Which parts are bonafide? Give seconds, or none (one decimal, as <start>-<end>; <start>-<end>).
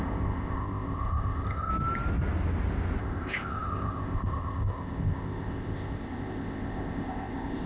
1.7-3.0